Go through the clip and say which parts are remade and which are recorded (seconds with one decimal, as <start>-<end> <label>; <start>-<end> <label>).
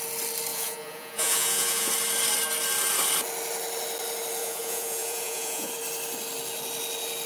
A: 0.0-0.5 recorded; 0.5-1.9 remade; 1.9-4.4 recorded; 4.4-5.7 remade; 5.7-7.3 recorded